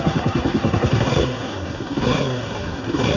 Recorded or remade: remade